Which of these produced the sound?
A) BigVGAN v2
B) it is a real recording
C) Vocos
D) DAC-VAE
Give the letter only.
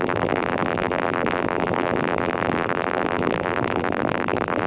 A